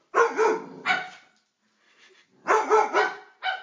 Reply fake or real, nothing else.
real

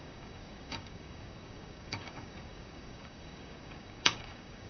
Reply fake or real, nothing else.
fake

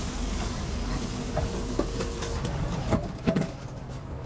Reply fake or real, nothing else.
fake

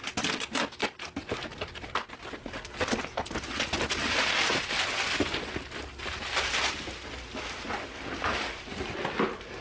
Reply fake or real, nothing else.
real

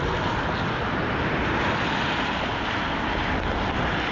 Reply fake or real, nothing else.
real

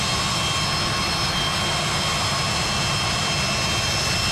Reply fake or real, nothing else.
real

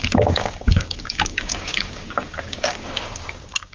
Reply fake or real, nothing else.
fake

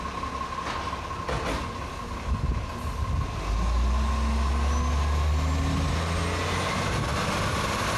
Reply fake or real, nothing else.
real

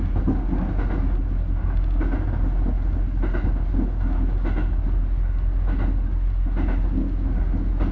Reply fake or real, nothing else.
real